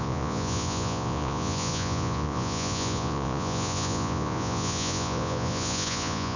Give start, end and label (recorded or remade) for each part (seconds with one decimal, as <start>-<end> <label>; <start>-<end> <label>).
0.0-6.4 remade

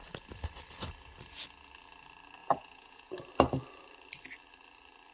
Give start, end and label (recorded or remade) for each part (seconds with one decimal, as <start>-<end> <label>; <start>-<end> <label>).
0.0-2.4 recorded; 2.4-3.1 remade; 3.1-5.1 recorded

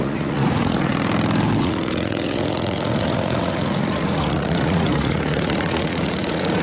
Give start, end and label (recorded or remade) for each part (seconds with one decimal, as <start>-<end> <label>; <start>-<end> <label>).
0.0-0.9 remade; 0.9-1.6 recorded; 1.6-6.6 remade

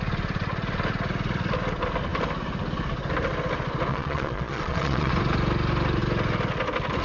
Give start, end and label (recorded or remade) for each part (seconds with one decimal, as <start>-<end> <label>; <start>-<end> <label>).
0.0-3.9 recorded; 3.9-5.1 remade; 5.1-7.0 recorded

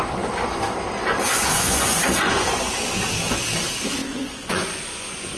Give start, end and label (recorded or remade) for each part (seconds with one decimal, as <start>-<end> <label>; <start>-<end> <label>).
0.0-1.0 recorded; 1.0-2.7 remade; 2.7-4.0 recorded; 4.0-5.4 remade

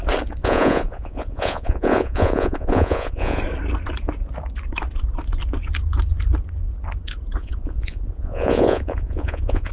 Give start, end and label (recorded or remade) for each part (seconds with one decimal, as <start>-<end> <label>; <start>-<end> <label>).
0.0-0.4 recorded; 0.4-3.4 remade; 3.4-7.4 recorded; 7.4-9.7 remade